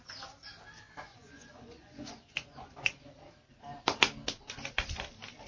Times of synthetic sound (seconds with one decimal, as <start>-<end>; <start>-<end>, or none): 1.1-3.0